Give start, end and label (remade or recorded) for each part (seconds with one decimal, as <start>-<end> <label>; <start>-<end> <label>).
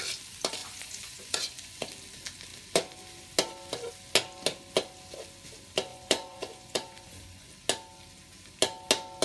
0.0-0.6 recorded; 0.6-1.8 remade; 1.8-5.9 recorded; 5.9-7.5 remade; 7.5-9.2 recorded